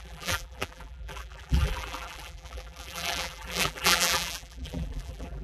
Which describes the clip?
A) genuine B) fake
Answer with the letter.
B